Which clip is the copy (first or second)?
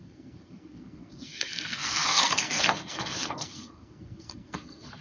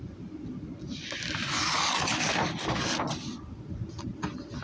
first